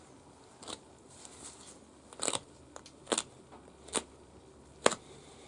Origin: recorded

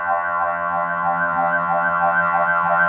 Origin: remade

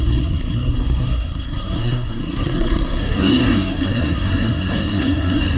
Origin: remade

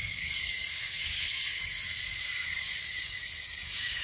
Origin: remade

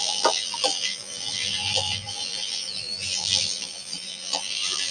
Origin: remade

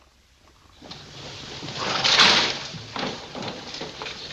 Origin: recorded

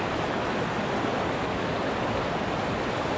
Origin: recorded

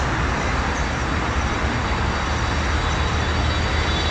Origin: recorded